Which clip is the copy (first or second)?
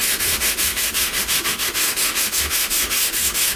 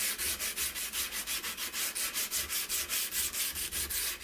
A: first